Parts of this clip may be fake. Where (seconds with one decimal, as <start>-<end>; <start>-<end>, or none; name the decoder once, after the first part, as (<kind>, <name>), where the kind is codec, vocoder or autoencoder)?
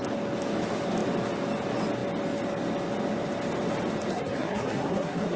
4.1-5.4 (codec, SNAC)